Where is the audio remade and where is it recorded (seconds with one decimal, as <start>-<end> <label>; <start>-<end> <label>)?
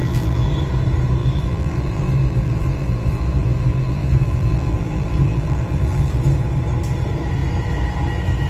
0.0-0.5 remade; 0.5-1.2 recorded; 1.2-6.2 remade; 6.2-8.5 recorded